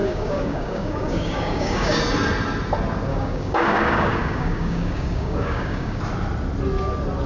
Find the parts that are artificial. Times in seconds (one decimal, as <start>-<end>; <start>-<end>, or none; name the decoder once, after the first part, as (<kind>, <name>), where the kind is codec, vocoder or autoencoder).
0.0-2.0 (codec, DAC); 3.1-6.0